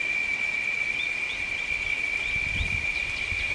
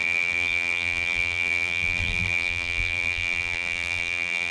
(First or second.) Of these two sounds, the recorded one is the first